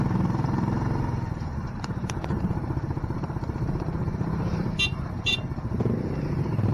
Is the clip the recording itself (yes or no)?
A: no